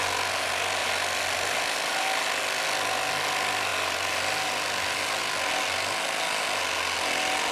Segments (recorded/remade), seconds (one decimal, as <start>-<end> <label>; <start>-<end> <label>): 0.0-0.8 recorded; 0.8-2.0 remade; 2.0-3.7 recorded; 3.7-5.2 remade; 5.2-7.5 recorded